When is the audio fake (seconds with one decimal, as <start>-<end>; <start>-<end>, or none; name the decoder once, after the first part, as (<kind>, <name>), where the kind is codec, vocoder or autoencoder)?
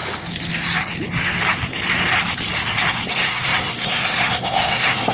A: 3.1-5.1 (codec, SNAC)